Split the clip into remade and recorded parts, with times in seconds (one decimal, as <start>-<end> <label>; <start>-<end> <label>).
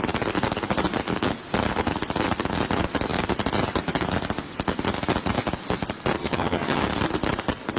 0.0-6.2 recorded; 6.2-6.8 remade; 6.8-7.8 recorded